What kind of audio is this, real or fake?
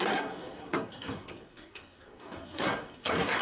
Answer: fake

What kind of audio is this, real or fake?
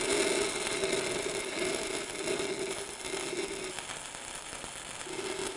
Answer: real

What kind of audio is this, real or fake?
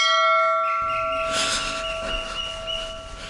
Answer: real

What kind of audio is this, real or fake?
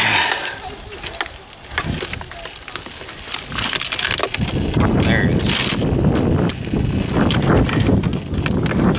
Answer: real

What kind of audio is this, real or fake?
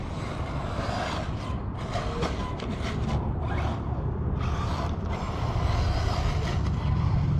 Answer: fake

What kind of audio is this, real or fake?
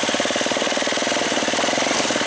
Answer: real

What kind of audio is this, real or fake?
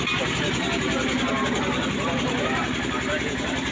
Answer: fake